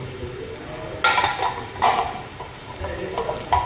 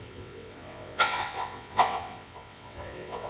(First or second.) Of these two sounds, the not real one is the second